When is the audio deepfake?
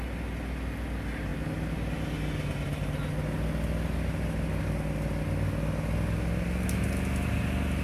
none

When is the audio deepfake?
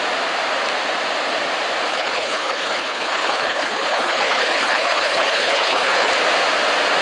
1.9-6.1 (codec, HILCodec)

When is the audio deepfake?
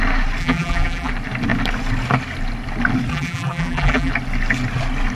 0.4-1.1 (vocoder, BigVGAN v2); 3.1-4.1